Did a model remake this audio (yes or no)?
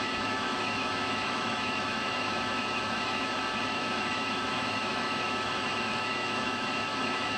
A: yes